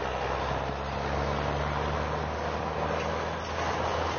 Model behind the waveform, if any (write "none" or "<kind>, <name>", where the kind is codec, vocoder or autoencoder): none